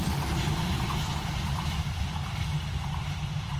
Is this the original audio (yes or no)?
yes